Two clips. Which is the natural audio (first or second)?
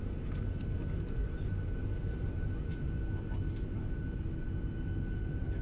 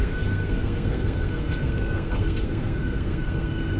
first